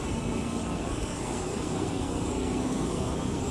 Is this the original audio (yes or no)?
no